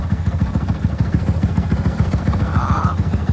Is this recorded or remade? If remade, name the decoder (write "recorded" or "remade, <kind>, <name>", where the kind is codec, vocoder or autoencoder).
remade, codec, SNAC